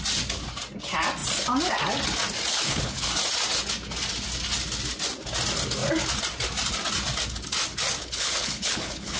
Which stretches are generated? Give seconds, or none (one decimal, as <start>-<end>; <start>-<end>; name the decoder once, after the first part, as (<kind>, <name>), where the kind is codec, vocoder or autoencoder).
2.5-3.1 (codec, HILCodec); 8.0-9.2